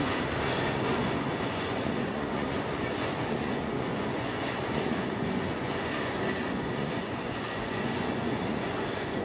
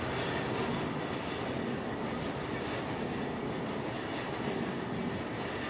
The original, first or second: second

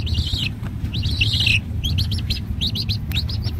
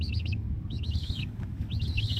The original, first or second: first